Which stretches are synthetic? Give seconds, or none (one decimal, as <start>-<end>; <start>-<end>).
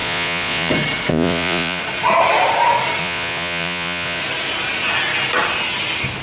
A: 0.0-0.7; 1.1-1.8; 3.0-4.2